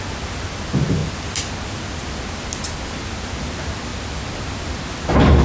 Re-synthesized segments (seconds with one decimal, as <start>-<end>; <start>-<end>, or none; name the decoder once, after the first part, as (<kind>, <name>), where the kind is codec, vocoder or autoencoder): 3.9-4.7 (vocoder, BigVGAN v2)